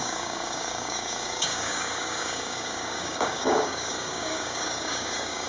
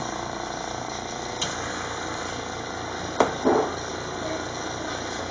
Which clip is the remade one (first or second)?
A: first